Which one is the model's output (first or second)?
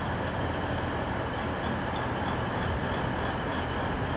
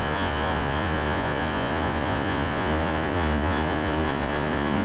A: second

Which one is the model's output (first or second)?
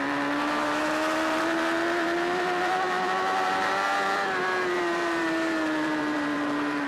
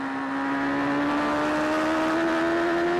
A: first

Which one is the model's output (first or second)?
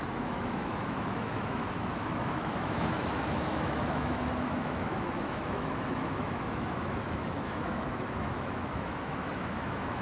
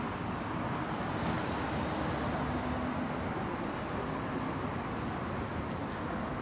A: first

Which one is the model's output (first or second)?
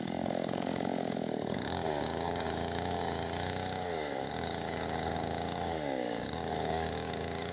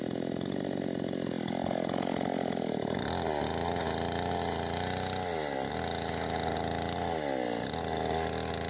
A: first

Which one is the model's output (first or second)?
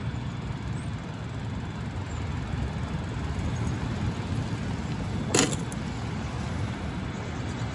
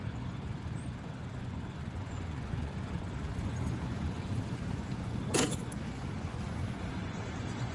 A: second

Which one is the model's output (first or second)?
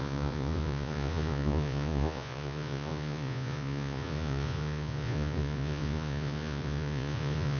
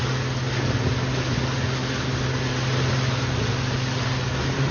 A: first